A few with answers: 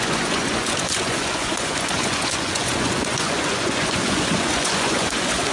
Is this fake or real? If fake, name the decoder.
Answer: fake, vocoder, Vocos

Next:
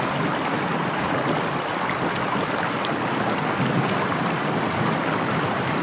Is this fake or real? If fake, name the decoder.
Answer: real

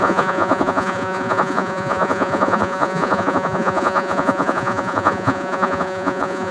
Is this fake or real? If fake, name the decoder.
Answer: fake, vocoder, Vocos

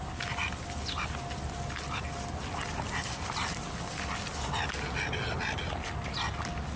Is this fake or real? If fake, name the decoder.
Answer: real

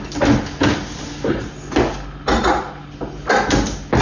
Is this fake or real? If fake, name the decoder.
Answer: real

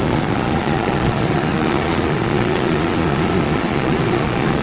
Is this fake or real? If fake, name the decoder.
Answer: fake, vocoder, Vocos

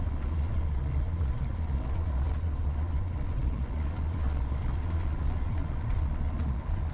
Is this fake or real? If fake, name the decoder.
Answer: fake, vocoder, Vocos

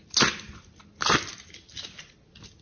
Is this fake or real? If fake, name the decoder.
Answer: real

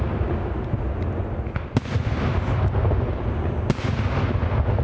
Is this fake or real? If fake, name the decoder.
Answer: real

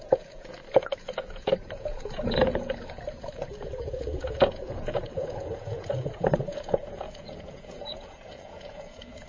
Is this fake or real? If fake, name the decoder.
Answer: fake, vocoder, Vocos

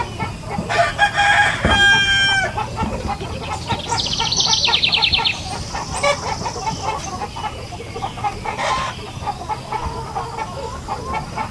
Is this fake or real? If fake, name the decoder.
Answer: real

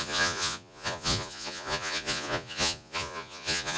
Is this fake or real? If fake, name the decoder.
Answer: fake, vocoder, Vocos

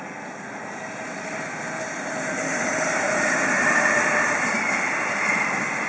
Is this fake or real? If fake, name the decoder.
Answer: real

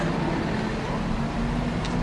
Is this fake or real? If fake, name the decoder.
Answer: real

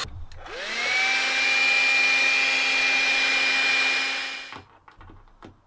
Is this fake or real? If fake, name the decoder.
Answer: real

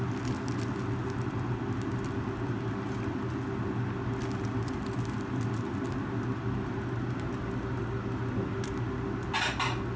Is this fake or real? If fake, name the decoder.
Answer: real